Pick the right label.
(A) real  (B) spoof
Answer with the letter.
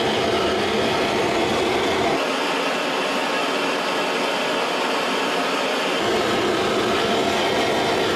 A